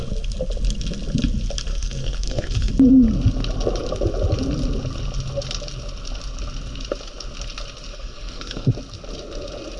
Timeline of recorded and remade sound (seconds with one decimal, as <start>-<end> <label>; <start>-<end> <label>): 0.0-1.7 recorded; 1.7-2.7 remade; 2.7-7.9 recorded; 7.9-8.7 remade; 8.7-9.8 recorded